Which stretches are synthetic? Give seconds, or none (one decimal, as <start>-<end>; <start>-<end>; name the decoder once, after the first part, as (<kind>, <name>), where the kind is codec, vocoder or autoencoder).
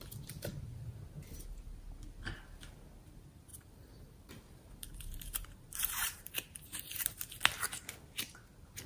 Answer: 3.5-7.4 (vocoder, BigVGAN v2)